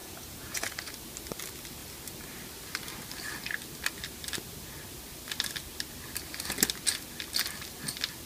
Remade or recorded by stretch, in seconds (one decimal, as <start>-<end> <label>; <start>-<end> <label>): 0.0-0.9 remade; 0.9-8.3 recorded